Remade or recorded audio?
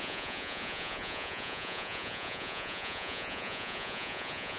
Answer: remade